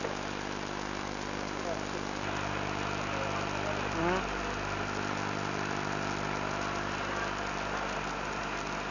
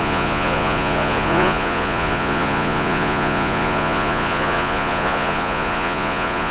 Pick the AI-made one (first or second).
second